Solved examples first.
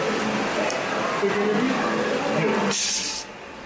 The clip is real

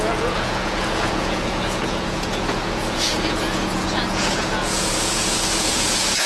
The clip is fake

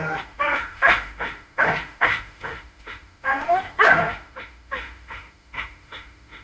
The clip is fake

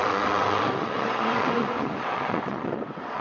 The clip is fake